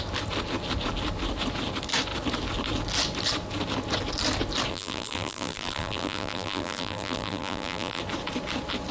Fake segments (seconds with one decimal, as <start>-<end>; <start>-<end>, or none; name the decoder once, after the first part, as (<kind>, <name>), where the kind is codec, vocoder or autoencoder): 4.7-8.0 (vocoder, BigVGAN v2)